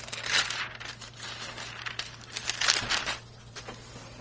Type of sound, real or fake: real